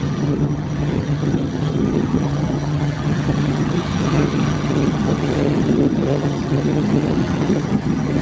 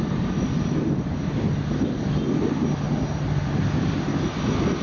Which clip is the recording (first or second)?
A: second